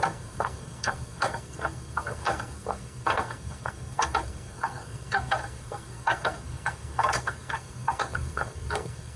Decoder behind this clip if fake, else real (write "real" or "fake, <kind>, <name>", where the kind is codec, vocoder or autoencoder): fake, codec, SNAC